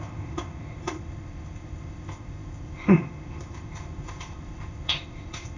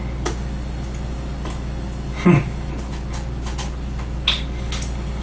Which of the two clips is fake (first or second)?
first